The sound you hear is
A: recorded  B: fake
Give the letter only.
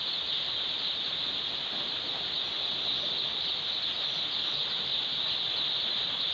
A